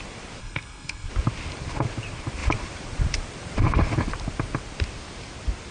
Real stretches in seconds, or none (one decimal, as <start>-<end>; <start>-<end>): 0.0-0.4; 1.1-5.7